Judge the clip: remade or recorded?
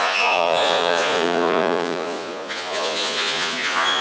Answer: remade